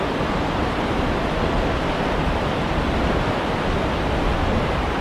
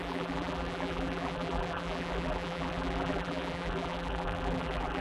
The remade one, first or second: second